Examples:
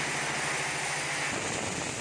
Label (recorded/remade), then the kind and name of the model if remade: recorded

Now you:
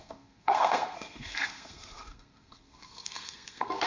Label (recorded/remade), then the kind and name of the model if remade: remade, codec, SNAC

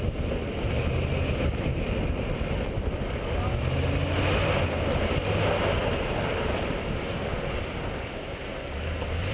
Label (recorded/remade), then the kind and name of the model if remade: recorded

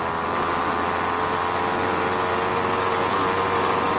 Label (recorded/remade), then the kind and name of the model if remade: recorded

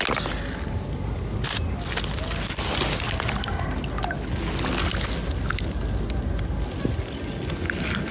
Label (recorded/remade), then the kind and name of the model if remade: recorded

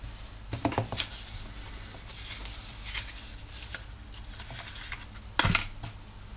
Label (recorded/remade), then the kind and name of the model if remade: recorded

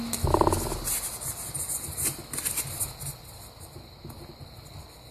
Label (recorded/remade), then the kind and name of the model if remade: recorded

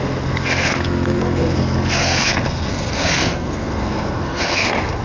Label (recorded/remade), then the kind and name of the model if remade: remade, codec, SNAC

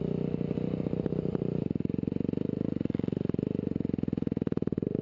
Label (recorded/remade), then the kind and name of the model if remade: recorded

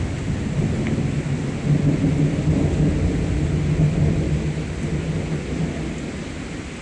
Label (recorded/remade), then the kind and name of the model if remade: recorded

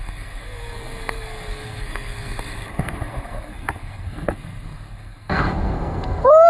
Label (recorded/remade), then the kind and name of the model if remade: remade, codec, SNAC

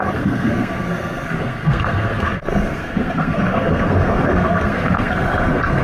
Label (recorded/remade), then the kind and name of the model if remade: remade, codec, SNAC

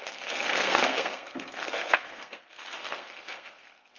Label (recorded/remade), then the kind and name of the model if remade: remade, codec, SNAC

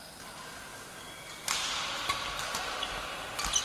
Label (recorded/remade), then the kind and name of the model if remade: recorded